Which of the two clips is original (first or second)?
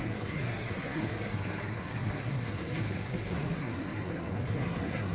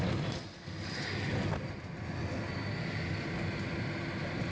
second